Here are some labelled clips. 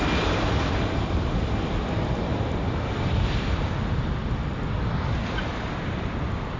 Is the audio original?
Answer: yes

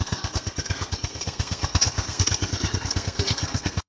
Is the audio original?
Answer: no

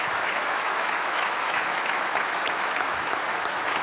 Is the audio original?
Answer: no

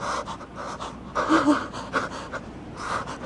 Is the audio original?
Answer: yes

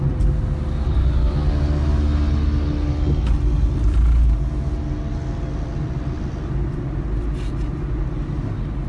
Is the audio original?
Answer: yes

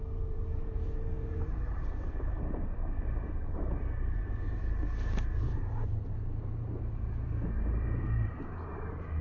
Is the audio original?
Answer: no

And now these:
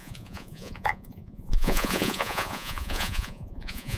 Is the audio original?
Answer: no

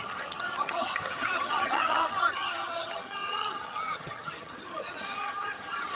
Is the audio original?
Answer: no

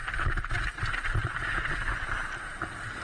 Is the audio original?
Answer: yes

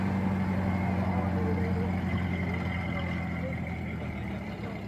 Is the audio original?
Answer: yes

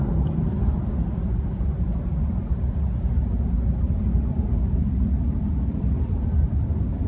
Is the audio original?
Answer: yes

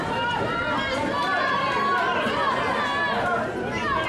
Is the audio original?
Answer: yes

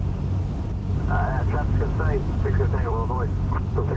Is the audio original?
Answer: no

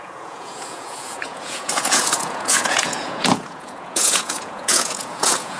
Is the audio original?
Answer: no